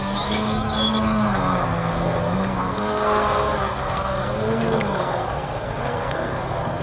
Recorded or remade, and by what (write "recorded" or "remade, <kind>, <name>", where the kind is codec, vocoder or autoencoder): remade, codec, SNAC